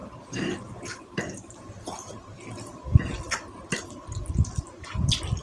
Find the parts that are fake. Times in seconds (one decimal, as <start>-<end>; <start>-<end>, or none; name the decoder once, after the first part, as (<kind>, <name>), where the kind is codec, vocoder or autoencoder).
0.0-2.0 (vocoder, BigVGAN v2)